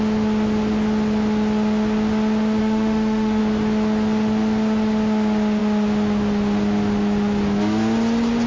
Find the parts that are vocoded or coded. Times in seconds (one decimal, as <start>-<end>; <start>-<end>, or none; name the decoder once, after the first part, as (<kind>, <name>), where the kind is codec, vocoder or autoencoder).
2.6-3.4 (autoencoder, DAC-VAE)

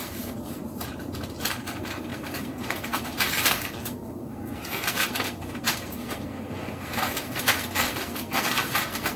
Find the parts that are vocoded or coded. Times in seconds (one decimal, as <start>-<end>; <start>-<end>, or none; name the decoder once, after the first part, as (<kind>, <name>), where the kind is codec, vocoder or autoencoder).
0.0-0.6 (codec, SNAC); 1.5-9.2

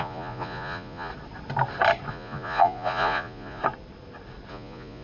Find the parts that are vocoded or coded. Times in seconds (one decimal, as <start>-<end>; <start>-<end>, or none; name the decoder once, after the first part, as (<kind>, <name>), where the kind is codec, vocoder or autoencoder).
0.0-1.1 (vocoder, Vocos); 2.1-3.6; 4.5-5.0

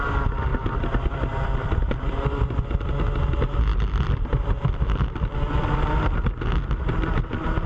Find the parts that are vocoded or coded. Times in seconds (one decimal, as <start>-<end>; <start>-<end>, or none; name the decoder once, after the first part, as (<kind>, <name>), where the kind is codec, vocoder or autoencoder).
0.5-2.0 (vocoder, BigVGAN v2); 3.7-5.0

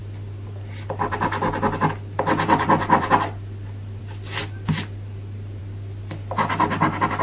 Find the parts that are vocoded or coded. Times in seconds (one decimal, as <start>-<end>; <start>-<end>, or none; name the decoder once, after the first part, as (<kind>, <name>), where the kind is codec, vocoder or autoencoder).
0.0-7.2 (vocoder, BigVGAN v2)

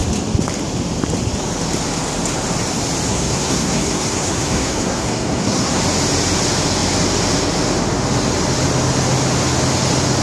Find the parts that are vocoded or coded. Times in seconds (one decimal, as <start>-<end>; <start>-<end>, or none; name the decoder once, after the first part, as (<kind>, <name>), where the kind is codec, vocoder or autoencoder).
3.1-5.8 (codec, SNAC)

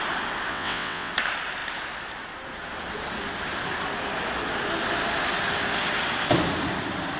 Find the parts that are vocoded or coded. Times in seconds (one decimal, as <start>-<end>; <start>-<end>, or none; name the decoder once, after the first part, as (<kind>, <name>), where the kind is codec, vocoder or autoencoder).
0.5-1.1 (vocoder, WaveNeXt)